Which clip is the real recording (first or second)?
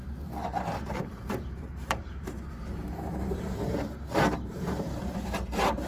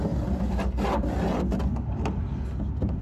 second